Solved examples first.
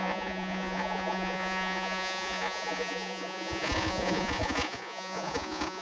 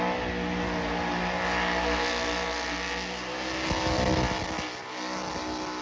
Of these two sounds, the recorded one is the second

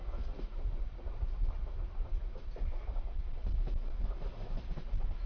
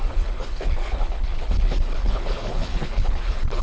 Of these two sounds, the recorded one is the first